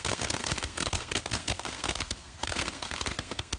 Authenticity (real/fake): fake